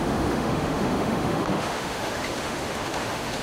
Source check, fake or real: fake